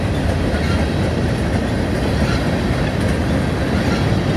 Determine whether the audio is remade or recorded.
recorded